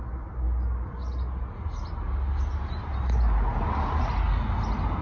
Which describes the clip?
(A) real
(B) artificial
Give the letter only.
A